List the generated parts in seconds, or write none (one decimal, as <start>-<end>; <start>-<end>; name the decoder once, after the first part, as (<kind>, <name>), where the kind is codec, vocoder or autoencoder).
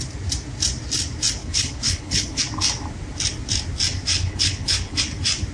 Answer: 1.4-2.4 (codec, HILCodec); 4.2-5.0